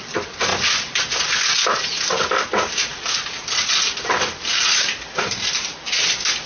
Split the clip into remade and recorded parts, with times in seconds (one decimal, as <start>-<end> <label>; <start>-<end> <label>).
0.0-6.5 recorded